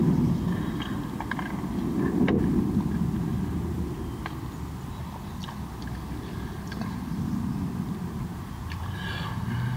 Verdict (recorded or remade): recorded